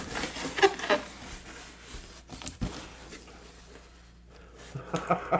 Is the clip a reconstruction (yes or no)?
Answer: no